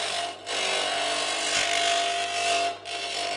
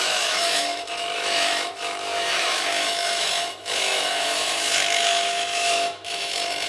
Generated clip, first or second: second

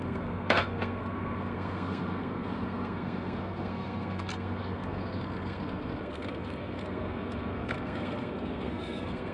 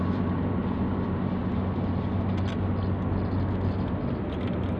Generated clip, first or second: first